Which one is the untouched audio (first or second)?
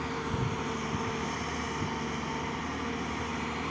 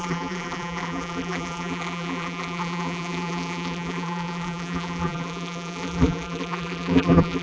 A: first